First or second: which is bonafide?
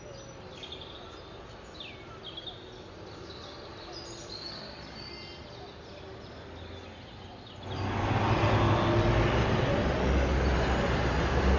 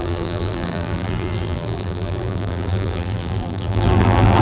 first